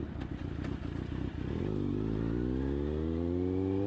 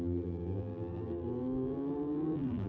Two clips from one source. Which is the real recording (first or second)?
first